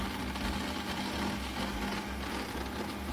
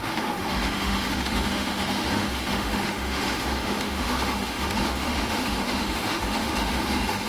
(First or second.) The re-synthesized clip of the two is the second